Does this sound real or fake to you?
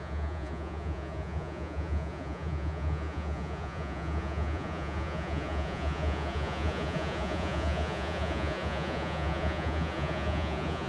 fake